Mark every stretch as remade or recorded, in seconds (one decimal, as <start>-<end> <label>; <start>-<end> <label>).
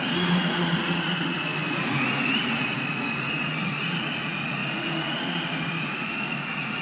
0.0-6.8 remade